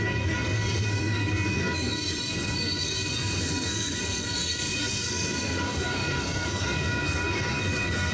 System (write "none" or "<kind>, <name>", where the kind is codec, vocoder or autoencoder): codec, SNAC